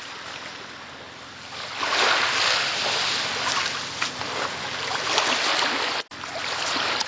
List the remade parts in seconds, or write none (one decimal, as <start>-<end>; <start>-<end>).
none